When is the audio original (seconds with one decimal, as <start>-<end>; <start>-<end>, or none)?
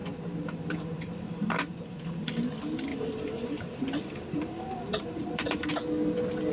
2.3-2.9; 5.7-6.5